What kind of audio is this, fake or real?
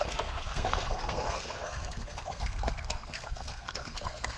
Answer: fake